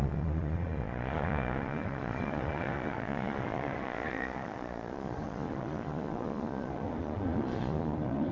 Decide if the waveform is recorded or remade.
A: remade